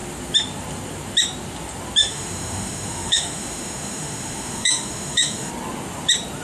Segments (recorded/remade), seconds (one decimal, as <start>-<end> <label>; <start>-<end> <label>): 0.0-2.0 recorded; 2.0-5.5 remade; 5.5-6.4 recorded